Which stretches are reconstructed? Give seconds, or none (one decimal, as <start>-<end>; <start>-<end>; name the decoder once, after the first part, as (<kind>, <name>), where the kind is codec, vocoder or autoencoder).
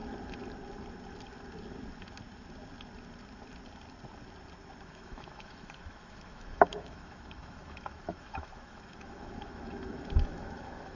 4.8-11.0 (autoencoder, DAC-VAE)